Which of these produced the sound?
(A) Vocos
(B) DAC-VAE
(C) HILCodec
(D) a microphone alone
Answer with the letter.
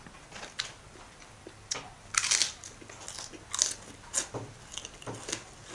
D